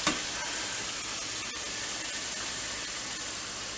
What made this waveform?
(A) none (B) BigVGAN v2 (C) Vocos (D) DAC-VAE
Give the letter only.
A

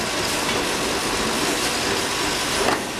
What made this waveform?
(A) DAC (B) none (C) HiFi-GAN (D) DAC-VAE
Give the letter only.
B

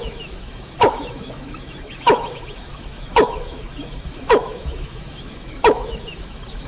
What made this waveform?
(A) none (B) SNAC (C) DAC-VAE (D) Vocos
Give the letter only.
C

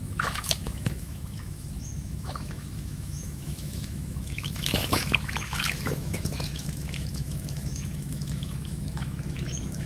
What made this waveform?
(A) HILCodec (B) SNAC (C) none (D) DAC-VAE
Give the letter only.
D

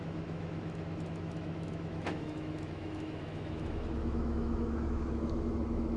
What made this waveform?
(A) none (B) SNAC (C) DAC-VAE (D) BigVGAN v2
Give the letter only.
C